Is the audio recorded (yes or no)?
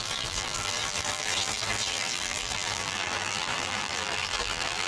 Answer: no